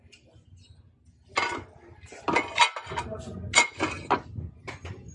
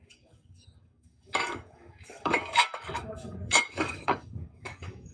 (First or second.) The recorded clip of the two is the first